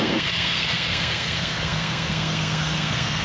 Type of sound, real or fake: fake